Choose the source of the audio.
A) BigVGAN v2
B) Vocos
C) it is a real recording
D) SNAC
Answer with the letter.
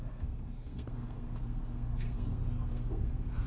D